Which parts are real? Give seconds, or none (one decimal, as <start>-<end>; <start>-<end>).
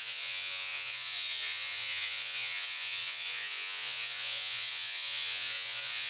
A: none